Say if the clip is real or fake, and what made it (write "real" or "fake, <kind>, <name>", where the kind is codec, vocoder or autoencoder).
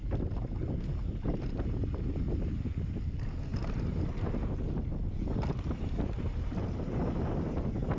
real